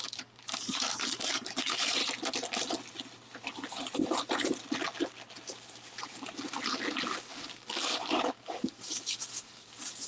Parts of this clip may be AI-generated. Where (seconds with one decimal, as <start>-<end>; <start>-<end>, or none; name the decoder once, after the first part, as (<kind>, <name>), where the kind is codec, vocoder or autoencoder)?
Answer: 0.0-2.0 (codec, DAC); 7.3-10.1